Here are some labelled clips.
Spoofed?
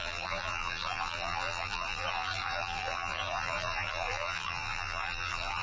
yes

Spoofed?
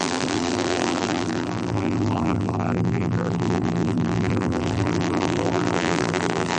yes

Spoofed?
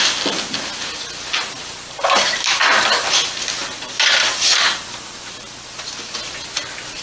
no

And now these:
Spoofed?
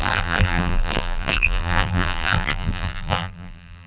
yes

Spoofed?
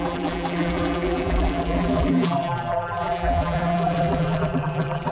yes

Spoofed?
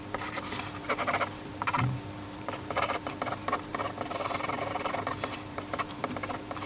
yes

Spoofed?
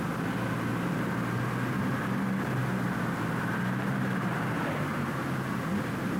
no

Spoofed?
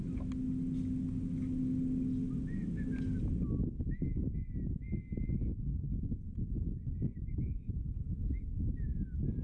no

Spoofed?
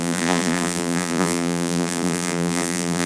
yes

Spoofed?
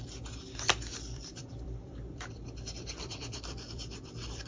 yes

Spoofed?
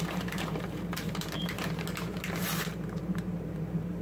yes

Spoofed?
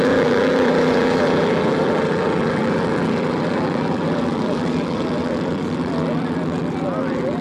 yes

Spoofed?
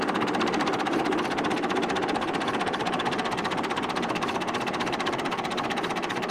yes